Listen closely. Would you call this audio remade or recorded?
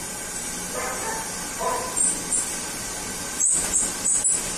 recorded